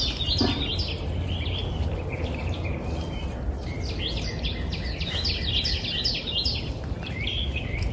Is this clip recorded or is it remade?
recorded